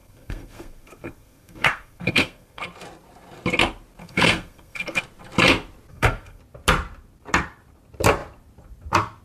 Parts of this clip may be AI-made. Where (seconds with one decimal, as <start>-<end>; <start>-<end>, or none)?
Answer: 0.0-2.6; 4.0-5.0; 5.9-6.4